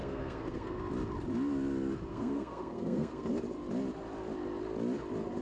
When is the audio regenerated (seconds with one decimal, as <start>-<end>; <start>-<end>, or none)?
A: 0.0-0.8; 2.1-3.3